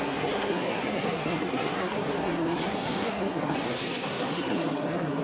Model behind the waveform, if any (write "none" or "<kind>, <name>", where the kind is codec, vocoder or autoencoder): codec, SNAC